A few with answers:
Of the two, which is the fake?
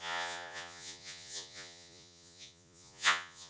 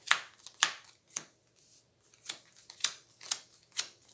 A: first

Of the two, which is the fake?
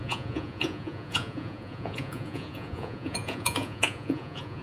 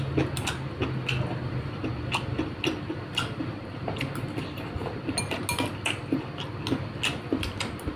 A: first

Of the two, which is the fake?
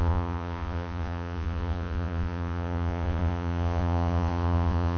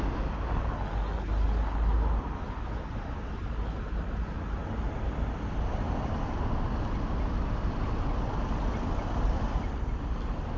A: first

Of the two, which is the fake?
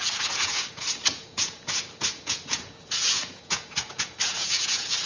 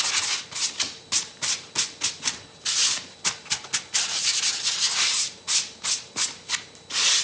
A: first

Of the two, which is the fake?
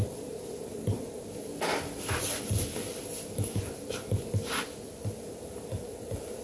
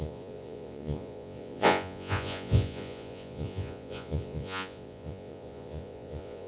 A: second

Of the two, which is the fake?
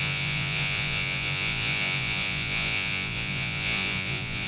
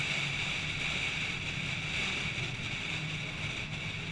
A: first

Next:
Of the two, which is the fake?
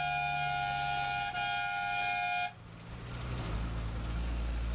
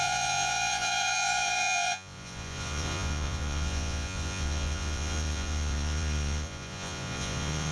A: second